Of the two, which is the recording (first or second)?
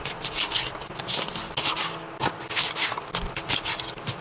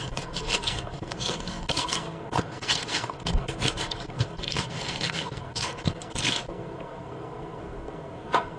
first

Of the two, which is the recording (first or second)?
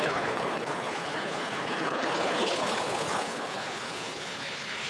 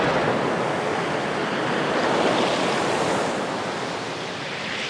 second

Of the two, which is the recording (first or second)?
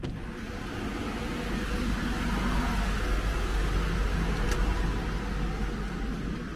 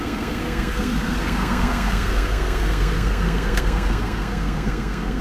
first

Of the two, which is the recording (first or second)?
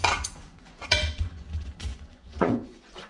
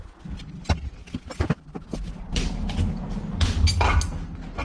second